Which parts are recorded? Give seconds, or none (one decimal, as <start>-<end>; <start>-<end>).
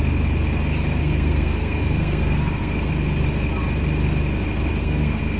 0.0-1.0; 2.9-4.8